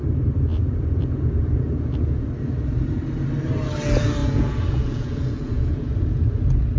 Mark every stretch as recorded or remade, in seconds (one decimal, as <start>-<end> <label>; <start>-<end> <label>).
0.0-0.5 recorded; 0.5-2.2 remade; 2.2-4.2 recorded; 4.2-5.9 remade; 5.9-6.8 recorded